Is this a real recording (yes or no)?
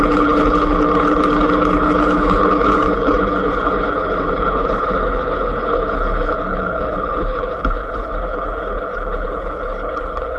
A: no